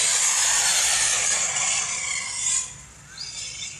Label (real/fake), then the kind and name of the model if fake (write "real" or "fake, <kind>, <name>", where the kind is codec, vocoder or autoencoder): fake, vocoder, BigVGAN v2